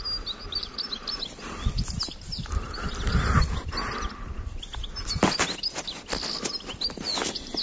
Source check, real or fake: real